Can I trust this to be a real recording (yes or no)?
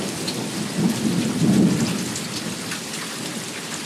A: yes